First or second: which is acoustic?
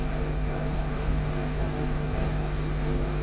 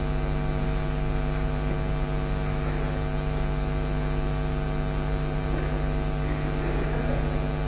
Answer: second